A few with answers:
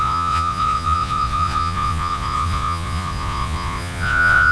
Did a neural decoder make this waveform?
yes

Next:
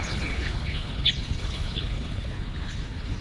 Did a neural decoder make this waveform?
yes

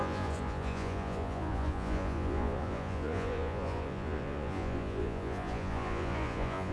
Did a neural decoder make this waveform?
yes